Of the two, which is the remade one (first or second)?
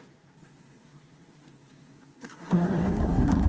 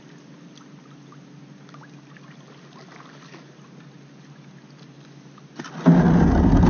first